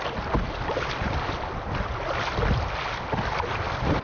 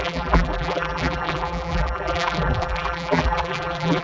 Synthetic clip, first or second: second